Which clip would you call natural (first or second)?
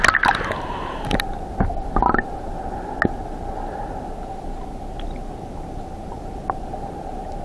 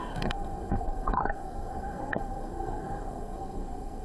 first